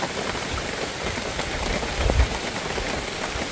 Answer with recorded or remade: remade